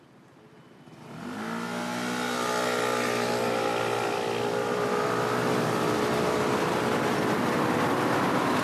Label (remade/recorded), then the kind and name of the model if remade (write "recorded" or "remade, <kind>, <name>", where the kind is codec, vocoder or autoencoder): recorded